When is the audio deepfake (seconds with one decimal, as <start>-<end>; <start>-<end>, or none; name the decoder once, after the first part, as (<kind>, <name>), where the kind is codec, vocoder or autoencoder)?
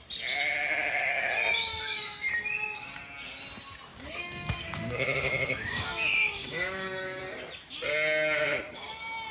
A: 1.7-2.3 (codec, DAC); 3.9-7.2